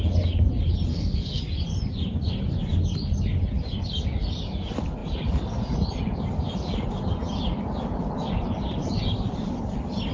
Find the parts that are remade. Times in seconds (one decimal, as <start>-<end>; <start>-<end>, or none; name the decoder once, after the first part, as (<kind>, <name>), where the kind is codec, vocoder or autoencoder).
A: 0.9-1.4 (codec, SNAC)